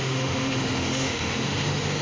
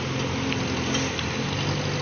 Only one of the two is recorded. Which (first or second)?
second